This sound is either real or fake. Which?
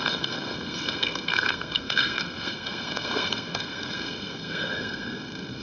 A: fake